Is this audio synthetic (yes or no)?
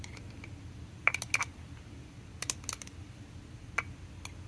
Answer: no